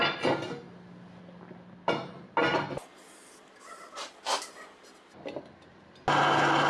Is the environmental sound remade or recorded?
recorded